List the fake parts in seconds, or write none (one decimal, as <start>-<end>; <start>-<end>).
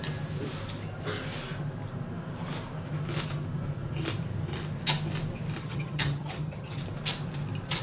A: 5.6-6.8